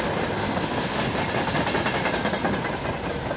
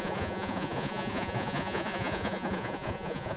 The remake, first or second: second